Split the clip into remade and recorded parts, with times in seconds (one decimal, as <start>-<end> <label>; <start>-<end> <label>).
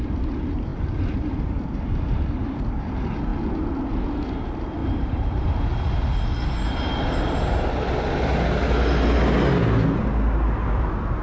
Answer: 0.0-4.8 recorded; 4.8-5.5 remade; 5.5-11.2 recorded